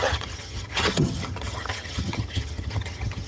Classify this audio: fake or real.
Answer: fake